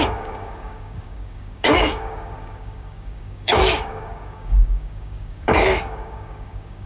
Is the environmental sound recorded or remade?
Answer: remade